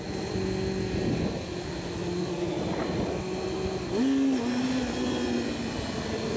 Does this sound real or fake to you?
real